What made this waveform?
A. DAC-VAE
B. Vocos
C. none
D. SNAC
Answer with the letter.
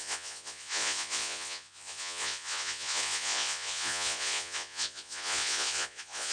B